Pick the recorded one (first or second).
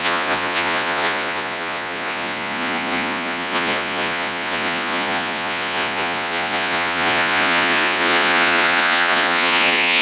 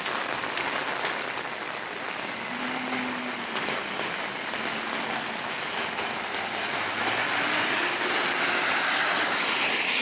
second